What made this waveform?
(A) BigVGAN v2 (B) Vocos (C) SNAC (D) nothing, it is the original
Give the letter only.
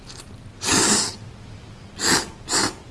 D